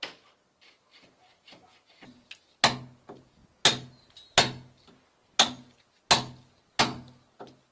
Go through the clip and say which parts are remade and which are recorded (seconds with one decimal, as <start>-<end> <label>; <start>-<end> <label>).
0.0-7.7 recorded